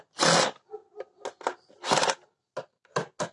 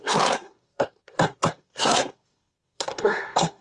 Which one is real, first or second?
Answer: first